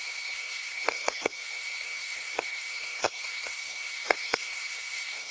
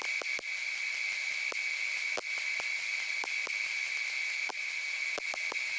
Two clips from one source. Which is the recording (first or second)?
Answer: second